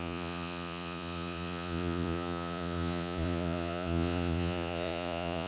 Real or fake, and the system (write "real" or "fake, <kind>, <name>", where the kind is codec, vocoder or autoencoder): fake, vocoder, Vocos